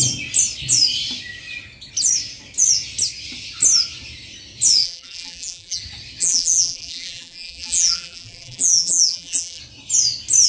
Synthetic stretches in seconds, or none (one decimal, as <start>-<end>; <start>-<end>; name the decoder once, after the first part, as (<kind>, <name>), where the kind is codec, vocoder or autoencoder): 4.8-5.8 (vocoder, BigVGAN v2); 6.2-9.6